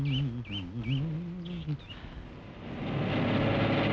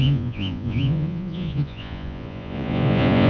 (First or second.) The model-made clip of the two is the second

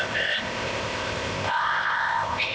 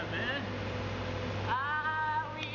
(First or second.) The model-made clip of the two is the first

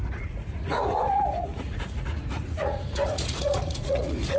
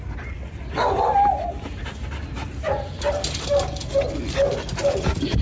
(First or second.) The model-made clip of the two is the first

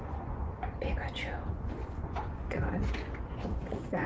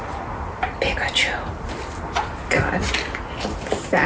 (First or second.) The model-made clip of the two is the first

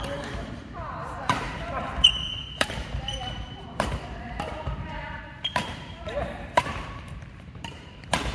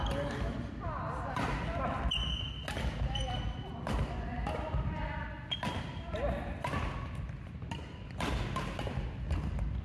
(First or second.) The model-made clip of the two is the first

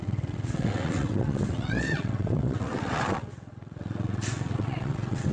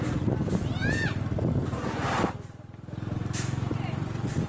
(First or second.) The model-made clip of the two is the first